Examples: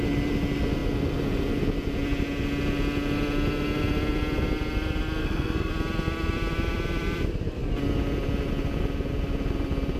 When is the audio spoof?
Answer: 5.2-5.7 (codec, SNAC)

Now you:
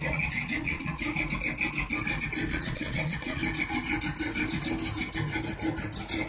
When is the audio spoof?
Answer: 0.0-1.0 (vocoder, Vocos); 2.5-3.4